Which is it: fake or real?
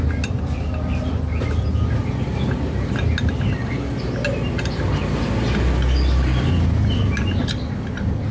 real